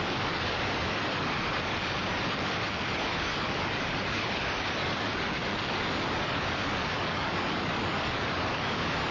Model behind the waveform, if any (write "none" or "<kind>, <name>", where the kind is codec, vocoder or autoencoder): codec, DAC